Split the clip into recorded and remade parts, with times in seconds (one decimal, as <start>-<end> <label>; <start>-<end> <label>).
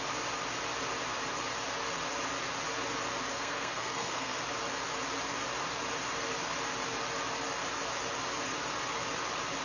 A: 0.0-3.3 recorded; 3.3-4.4 remade; 4.4-9.6 recorded